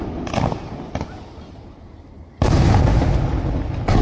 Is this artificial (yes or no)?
no